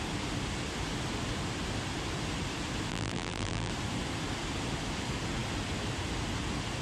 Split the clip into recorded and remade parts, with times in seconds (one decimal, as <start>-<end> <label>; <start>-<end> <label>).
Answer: 0.0-2.9 recorded; 2.9-3.7 remade; 3.7-6.8 recorded